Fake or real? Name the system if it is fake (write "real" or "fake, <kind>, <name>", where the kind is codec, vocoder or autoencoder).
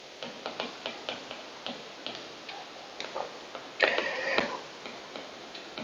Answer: real